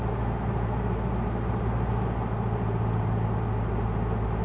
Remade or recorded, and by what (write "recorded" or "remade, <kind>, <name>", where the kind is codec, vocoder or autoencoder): recorded